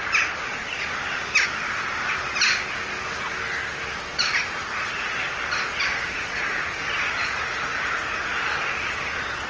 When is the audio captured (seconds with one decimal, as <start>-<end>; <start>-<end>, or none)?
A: 0.0-4.4; 5.1-5.9; 8.5-9.5